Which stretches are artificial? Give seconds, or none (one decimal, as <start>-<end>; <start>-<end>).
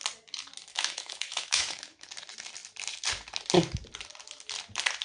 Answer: 0.7-2.1